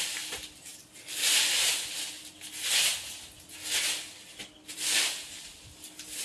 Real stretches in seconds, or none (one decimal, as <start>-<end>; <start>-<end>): 0.7-4.4